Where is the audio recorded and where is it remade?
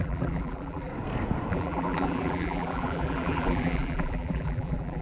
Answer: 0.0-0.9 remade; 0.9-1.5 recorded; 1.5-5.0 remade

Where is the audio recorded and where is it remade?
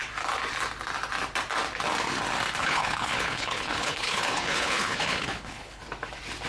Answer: 0.0-2.6 recorded; 2.6-5.8 remade; 5.8-6.5 recorded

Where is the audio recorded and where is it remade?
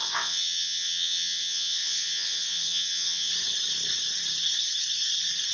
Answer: 0.0-3.3 remade; 3.3-5.5 recorded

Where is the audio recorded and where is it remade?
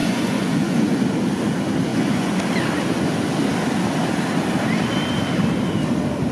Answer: 0.0-1.0 remade; 1.0-1.9 recorded; 1.9-2.4 remade; 2.4-6.3 recorded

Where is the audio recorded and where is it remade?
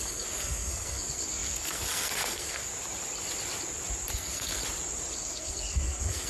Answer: 0.0-2.7 remade; 2.7-4.1 recorded; 4.1-4.6 remade; 4.6-5.1 recorded; 5.1-6.3 remade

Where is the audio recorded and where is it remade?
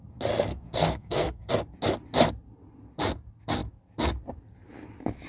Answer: 0.0-0.5 recorded; 0.5-1.5 remade; 1.5-5.3 recorded